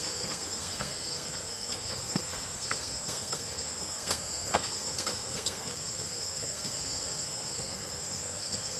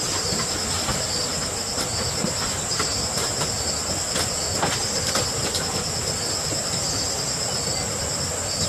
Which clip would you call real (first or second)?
second